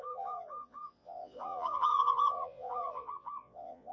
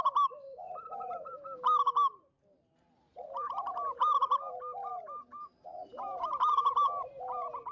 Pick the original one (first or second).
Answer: second